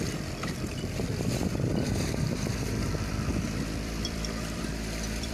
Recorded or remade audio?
remade